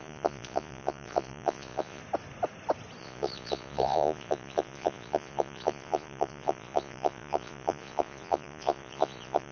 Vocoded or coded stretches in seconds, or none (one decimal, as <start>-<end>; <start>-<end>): 0.0-2.0; 3.0-9.5